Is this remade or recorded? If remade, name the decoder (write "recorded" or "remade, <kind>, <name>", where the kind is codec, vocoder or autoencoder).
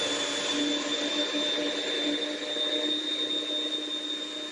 recorded